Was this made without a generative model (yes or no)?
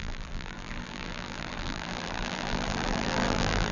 no